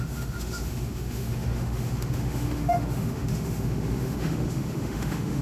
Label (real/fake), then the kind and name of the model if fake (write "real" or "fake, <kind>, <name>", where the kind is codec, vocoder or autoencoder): fake, autoencoder, DAC-VAE